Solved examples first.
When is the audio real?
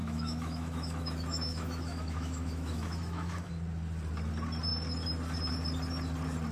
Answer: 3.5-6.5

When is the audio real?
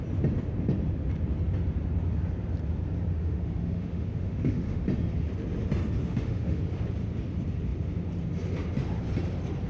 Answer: 0.0-3.2; 4.8-6.0; 6.6-9.7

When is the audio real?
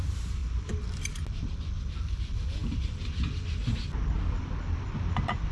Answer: 0.0-5.5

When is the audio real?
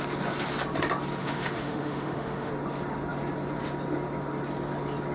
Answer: 0.0-1.2; 2.5-5.1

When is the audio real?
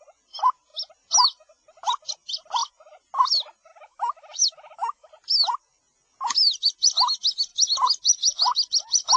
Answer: 0.0-3.7; 5.1-9.2